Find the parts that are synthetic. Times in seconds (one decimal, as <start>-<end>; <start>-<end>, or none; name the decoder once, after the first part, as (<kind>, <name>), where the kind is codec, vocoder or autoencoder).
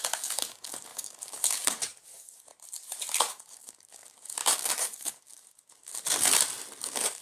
0.0-2.5 (codec, DAC); 3.2-5.9; 6.8-7.2